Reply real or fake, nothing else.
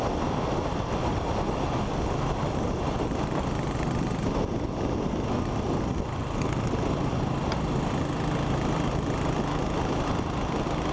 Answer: real